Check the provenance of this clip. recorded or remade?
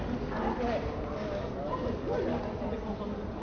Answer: recorded